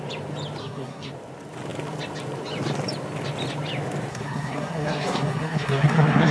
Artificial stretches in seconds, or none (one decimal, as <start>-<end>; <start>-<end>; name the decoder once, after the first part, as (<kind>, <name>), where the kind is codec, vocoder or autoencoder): 0.6-1.1 (codec, SNAC); 4.1-6.3